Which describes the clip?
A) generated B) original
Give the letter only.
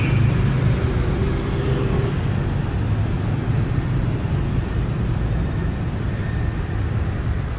B